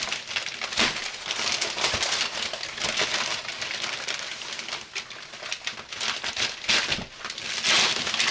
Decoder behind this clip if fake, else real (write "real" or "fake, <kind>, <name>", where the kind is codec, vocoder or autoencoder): real